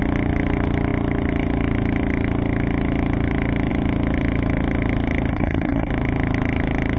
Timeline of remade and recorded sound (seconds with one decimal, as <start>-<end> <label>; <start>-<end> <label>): 0.0-5.3 recorded; 5.3-5.9 remade; 5.9-7.0 recorded